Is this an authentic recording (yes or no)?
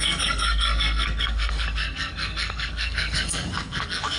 no